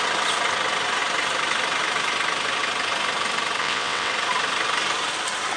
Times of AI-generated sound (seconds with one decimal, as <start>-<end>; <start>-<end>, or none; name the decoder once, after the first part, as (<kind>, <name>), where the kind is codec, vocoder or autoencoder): 3.6-4.1 (vocoder, WaveNeXt)